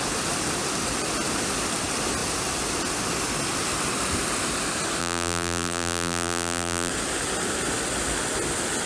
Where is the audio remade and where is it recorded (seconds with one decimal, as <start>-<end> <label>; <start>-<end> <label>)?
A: 0.0-5.0 recorded; 5.0-6.9 remade; 6.9-8.9 recorded